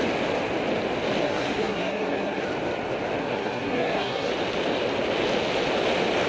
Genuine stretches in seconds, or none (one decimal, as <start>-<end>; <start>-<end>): 0.0-1.2; 2.4-3.2; 4.3-6.3